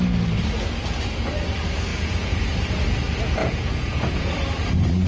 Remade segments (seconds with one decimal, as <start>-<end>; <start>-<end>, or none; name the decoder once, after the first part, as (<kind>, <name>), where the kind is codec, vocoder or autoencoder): 1.9-2.4 (vocoder, Vocos); 3.4-4.3